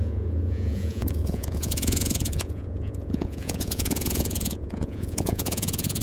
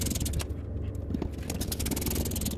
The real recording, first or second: second